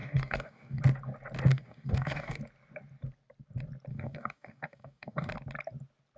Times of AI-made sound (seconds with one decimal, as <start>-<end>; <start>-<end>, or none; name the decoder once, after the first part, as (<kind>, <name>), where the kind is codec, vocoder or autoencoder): 0.0-0.8 (codec, DAC); 1.5-2.4; 3.9-5.3